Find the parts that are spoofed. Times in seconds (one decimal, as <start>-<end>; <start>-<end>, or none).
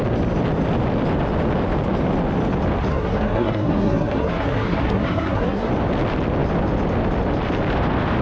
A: 2.9-5.7